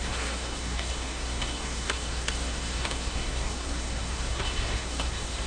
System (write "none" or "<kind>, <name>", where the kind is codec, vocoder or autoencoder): codec, SNAC